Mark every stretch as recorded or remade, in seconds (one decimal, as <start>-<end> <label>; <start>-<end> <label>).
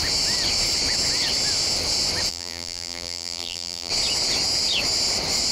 0.0-2.3 recorded; 2.3-3.9 remade; 3.9-5.5 recorded